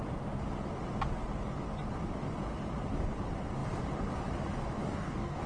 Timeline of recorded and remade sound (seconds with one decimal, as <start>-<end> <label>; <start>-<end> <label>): 0.0-4.8 recorded; 4.8-5.5 remade